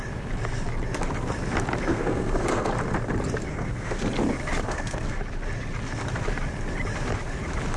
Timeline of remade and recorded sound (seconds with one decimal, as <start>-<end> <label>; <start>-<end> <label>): 0.0-1.9 recorded; 1.9-2.7 remade; 2.7-3.5 recorded; 3.5-4.0 remade; 4.0-4.7 recorded; 4.7-5.2 remade; 5.2-7.8 recorded